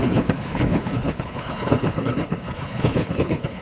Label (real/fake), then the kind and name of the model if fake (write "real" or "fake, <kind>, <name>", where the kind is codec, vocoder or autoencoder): fake, codec, HILCodec